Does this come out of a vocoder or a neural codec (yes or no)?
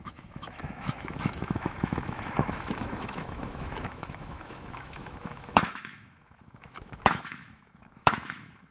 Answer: yes